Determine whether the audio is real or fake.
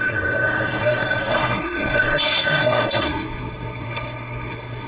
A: fake